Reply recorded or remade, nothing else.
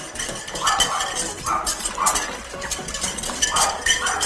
remade